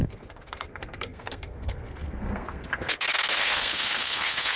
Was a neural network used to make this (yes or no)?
yes